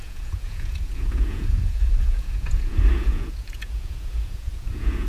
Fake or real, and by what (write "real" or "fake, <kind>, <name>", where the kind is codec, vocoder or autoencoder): fake, vocoder, Vocos